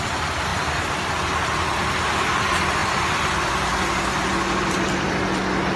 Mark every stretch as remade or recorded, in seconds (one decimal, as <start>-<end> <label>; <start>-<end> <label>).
0.0-5.8 recorded